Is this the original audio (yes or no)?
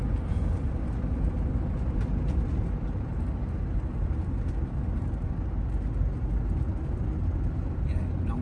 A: yes